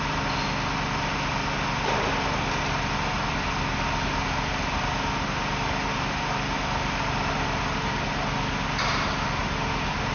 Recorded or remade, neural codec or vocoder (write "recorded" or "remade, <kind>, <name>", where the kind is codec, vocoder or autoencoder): recorded